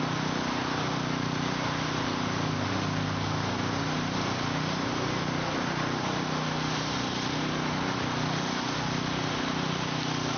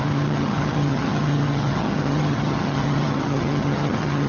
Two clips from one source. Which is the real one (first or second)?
first